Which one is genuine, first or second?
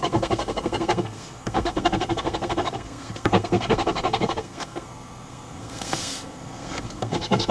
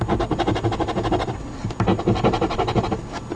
second